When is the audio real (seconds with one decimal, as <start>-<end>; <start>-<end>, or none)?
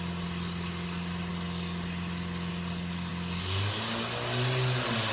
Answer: 0.0-5.1